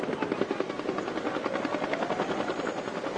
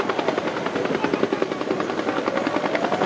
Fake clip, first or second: second